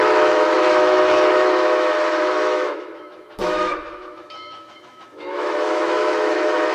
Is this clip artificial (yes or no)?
yes